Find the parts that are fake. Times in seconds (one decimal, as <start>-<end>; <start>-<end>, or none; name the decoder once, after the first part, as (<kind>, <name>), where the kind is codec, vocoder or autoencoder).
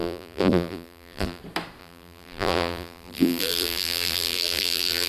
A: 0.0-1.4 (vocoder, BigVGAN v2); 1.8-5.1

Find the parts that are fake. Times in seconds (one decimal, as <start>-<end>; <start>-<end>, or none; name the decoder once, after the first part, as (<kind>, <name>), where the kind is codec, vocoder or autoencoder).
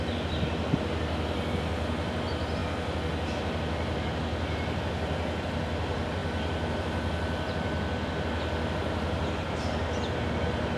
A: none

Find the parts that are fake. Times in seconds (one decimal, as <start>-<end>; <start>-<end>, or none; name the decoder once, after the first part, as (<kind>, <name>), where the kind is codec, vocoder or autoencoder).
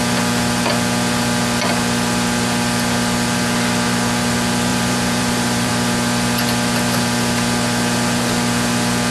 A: 4.7-5.7 (vocoder, BigVGAN v2)